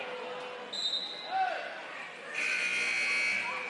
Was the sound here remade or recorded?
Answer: recorded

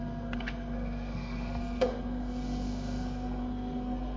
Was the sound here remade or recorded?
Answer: remade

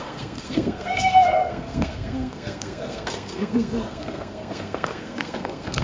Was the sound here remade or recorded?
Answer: remade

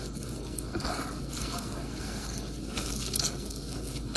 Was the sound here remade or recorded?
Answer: remade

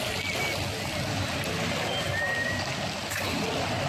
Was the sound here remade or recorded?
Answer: recorded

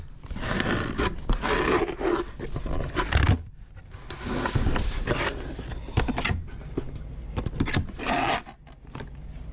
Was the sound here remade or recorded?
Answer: recorded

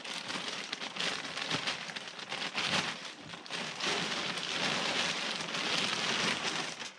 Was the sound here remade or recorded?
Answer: recorded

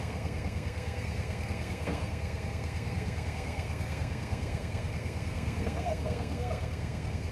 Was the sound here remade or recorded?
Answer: remade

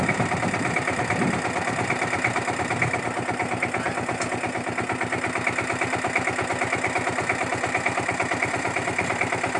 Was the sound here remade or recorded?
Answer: recorded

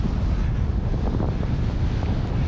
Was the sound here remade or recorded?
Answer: recorded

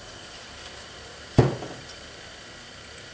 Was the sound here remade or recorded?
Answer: recorded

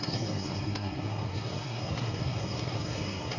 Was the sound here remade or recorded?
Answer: remade